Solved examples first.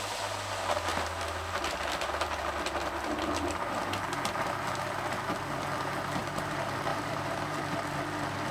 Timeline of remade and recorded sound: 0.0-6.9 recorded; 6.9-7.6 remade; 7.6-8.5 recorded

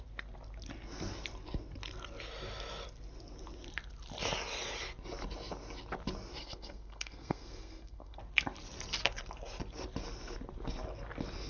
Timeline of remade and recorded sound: 0.0-6.4 recorded; 6.4-8.2 remade; 8.2-11.5 recorded

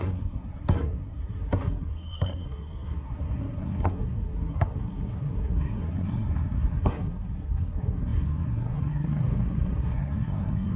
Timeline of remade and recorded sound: 0.0-10.8 remade

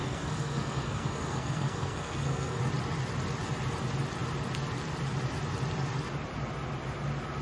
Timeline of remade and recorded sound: 0.0-2.6 remade; 2.6-7.4 recorded

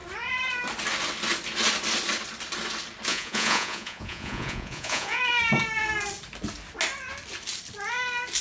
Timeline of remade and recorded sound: 0.0-3.1 recorded; 3.1-5.2 remade; 5.2-8.4 recorded

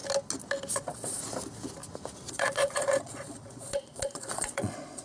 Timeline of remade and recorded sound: 0.0-0.7 recorded; 0.7-1.2 remade; 1.2-2.3 recorded; 2.3-5.0 remade